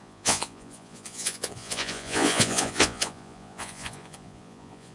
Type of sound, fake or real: fake